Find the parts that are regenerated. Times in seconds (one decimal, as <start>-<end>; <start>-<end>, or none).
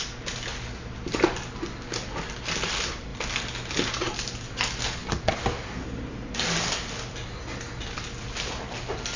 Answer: none